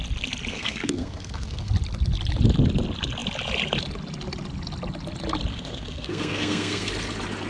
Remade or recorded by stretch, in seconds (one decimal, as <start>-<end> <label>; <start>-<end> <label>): 0.0-0.5 recorded; 0.5-1.7 remade; 1.7-5.5 recorded; 5.5-6.9 remade; 6.9-7.5 recorded